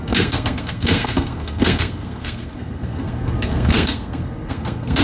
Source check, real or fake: fake